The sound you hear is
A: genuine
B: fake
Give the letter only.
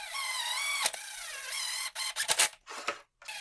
A